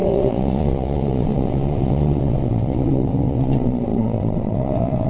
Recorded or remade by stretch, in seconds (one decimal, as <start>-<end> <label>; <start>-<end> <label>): 0.0-5.1 remade